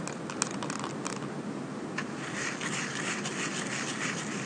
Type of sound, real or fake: real